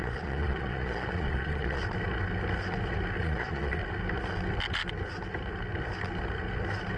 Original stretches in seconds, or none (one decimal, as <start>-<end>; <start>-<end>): 1.8-3.2; 3.8-7.0